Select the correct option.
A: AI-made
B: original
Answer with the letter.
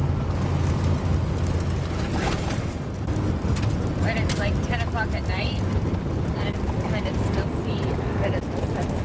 B